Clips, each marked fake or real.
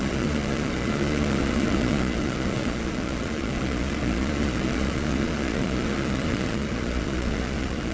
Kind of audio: fake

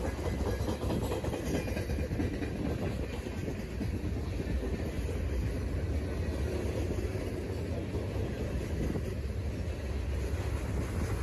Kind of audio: real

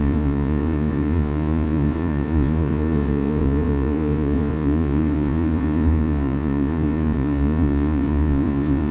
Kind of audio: fake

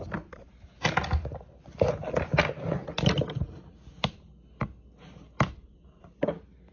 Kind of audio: real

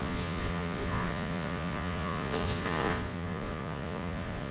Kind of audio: fake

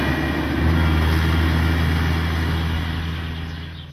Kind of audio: real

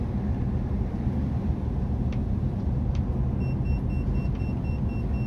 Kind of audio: real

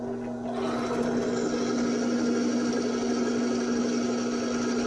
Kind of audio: real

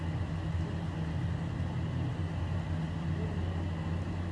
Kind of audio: real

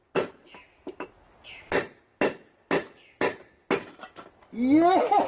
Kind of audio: real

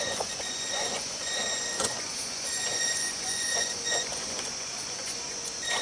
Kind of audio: fake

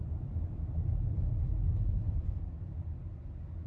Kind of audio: real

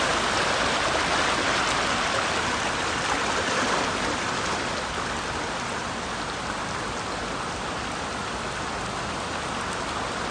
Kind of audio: real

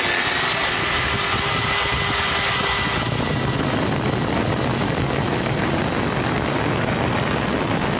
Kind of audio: real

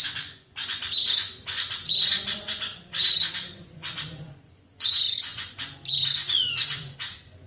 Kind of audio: fake